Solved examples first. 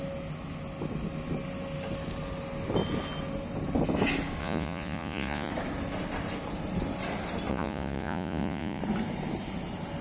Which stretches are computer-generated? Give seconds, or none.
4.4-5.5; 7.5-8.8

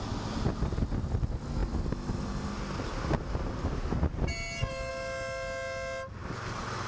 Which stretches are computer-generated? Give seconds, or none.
none

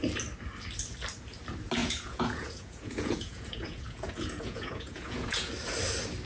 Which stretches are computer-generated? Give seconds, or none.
1.8-5.5